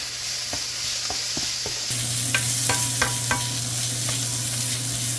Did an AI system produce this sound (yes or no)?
no